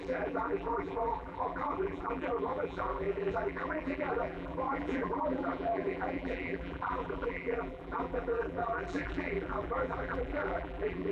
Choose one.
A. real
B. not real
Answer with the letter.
B